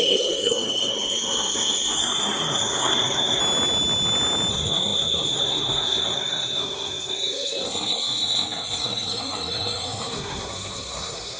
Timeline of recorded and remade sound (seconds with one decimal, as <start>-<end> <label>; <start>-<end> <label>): 0.0-3.4 remade; 3.4-4.5 recorded; 4.5-11.4 remade